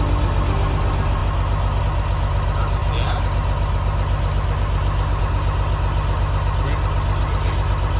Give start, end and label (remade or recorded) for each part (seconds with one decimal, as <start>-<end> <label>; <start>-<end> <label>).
0.0-8.0 recorded